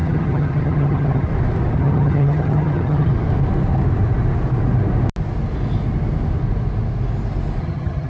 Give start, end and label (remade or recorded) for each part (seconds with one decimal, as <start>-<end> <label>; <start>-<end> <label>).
0.0-1.3 remade; 1.3-1.8 recorded; 1.8-3.1 remade; 3.1-7.6 recorded; 7.6-8.1 remade